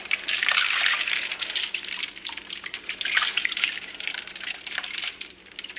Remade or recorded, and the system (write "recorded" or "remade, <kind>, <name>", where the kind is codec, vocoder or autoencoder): remade, vocoder, BigVGAN v2